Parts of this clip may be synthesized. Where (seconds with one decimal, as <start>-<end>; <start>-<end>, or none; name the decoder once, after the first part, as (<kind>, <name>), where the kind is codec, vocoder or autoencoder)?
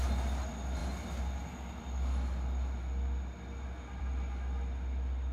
none